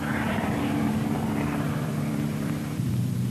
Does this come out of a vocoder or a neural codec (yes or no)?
yes